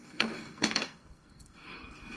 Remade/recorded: remade